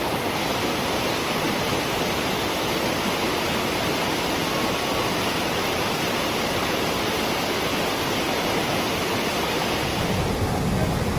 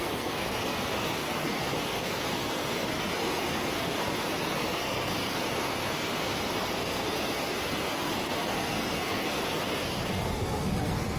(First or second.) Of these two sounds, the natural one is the first